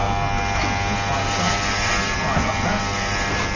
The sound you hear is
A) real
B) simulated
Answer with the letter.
A